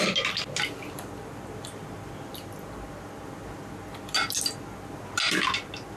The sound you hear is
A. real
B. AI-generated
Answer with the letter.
A